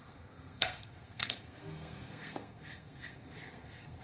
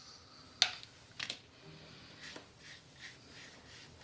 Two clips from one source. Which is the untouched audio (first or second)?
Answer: second